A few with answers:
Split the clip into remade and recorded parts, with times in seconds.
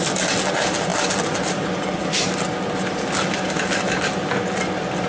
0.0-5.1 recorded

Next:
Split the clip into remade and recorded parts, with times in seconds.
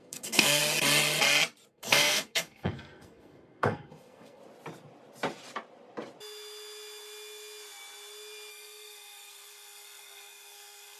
0.0-0.6 remade; 0.6-1.7 recorded; 1.7-4.4 remade; 4.4-8.5 recorded; 8.5-11.0 remade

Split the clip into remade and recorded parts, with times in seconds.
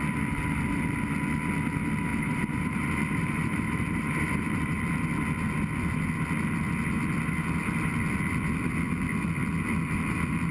0.0-2.1 recorded; 2.1-4.8 remade; 4.8-10.5 recorded